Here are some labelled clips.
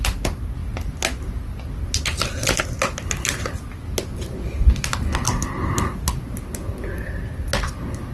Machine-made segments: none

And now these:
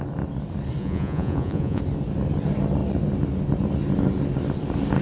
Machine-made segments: 0.8-1.8 (vocoder, Vocos)

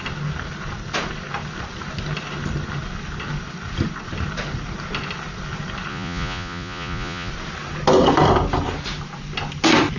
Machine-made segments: 5.9-7.3 (vocoder, Vocos)

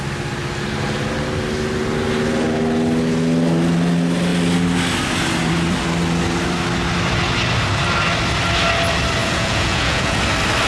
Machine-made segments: 9.2-10.2 (vocoder, Vocos)